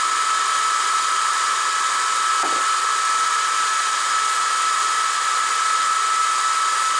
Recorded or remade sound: recorded